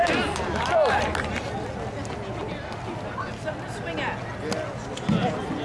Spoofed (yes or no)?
no